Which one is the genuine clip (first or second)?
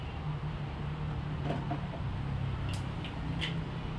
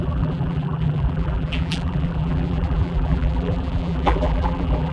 first